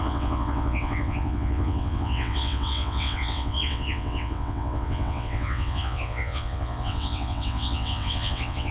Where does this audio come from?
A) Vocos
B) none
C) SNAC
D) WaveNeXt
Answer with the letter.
D